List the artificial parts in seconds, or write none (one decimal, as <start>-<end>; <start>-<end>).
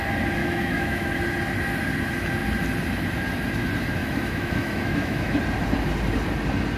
0.4-1.1; 4.0-5.4